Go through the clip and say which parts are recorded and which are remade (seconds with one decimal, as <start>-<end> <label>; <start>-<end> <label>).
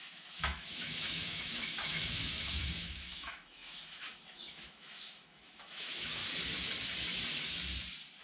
0.0-6.2 remade; 6.2-8.2 recorded